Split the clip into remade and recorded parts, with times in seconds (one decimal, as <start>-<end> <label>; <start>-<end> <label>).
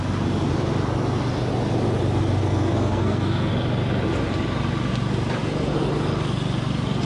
0.0-2.4 recorded; 2.4-3.5 remade; 3.5-7.1 recorded